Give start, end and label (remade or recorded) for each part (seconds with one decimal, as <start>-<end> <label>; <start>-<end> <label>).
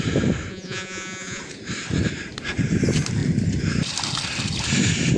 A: 0.0-0.5 recorded; 0.5-1.4 remade; 1.4-5.2 recorded